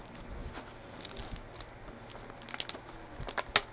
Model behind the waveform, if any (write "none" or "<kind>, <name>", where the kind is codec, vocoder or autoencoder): none